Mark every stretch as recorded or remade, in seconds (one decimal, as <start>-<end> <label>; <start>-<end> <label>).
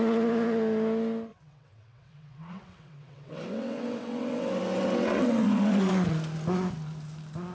0.0-1.3 recorded; 1.3-5.8 remade; 5.8-7.5 recorded